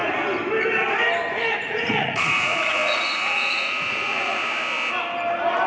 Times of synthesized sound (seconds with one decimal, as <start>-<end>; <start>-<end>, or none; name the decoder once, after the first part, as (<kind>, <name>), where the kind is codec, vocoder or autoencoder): 1.6-4.4 (vocoder, Vocos)